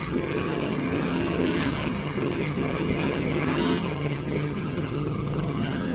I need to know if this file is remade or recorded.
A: remade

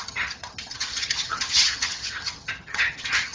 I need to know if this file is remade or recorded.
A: remade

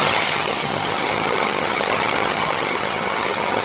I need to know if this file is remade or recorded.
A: remade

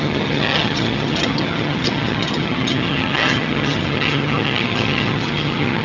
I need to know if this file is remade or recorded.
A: remade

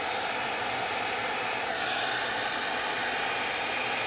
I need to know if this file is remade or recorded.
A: recorded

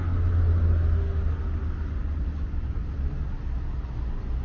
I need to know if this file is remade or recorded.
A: recorded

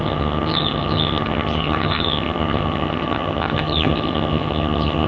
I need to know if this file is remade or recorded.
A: remade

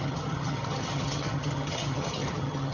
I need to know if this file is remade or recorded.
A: remade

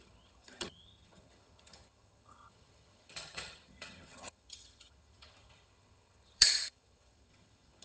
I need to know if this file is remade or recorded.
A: remade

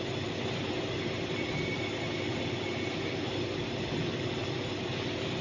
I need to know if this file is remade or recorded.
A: recorded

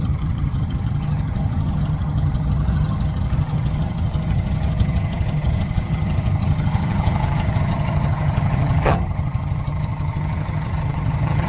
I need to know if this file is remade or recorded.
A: remade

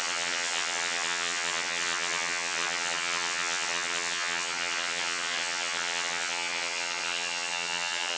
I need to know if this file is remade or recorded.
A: remade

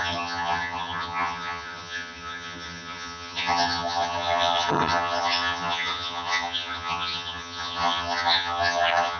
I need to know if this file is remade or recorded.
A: remade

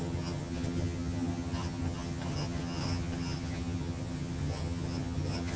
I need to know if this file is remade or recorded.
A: remade